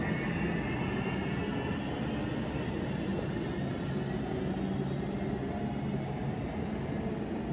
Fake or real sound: real